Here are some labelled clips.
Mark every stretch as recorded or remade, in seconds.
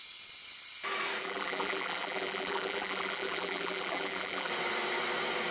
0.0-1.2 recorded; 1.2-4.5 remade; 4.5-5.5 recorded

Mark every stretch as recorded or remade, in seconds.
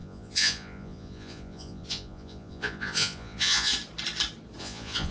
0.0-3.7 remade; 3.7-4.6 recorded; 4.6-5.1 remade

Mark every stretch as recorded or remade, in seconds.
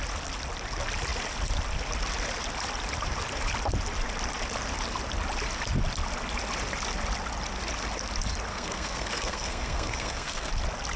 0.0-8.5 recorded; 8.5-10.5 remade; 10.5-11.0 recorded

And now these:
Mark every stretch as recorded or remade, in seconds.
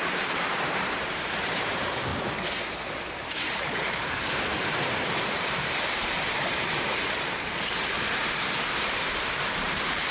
0.0-2.1 remade; 2.1-2.7 recorded; 2.7-10.1 remade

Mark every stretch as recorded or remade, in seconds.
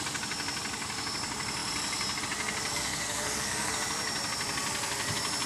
0.0-2.7 recorded; 2.7-3.7 remade; 3.7-5.5 recorded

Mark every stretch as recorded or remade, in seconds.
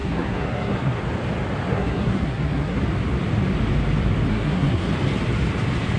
0.0-1.0 remade; 1.0-1.7 recorded; 1.7-2.8 remade; 2.8-4.3 recorded; 4.3-4.9 remade; 4.9-6.0 recorded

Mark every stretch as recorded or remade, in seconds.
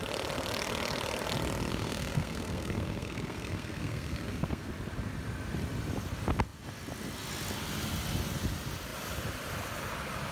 0.0-1.7 recorded; 1.7-4.7 remade; 4.7-10.3 recorded